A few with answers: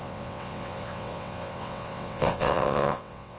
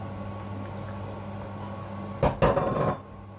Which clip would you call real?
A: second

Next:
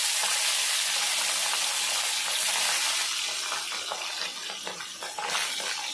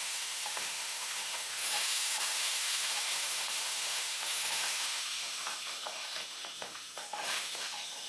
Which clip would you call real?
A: first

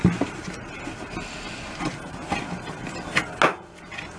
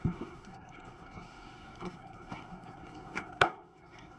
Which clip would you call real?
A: first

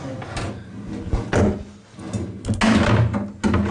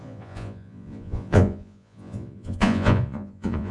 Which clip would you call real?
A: first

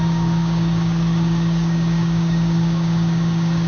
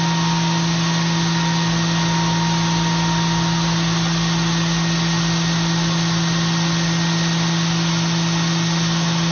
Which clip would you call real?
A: second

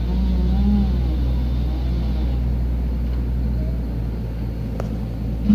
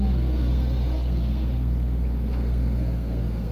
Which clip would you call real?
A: first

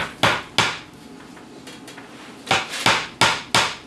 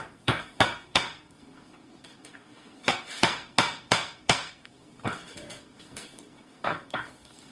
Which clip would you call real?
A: first